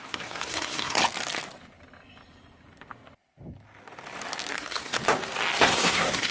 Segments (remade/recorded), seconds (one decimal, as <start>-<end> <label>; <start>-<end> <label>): 0.0-1.0 remade; 1.0-4.5 recorded; 4.5-5.0 remade; 5.0-5.6 recorded; 5.6-6.3 remade